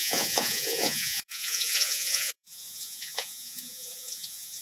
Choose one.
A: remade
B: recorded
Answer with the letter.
A